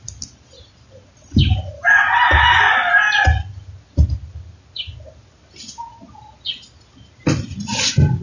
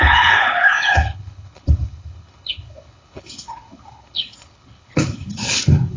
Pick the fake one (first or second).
second